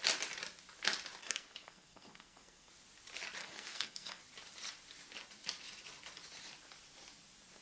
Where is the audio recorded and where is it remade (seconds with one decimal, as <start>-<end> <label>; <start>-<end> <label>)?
0.0-1.2 recorded; 1.2-2.7 remade; 2.7-3.4 recorded; 3.4-4.2 remade; 4.2-7.6 recorded